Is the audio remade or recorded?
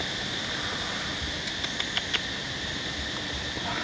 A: recorded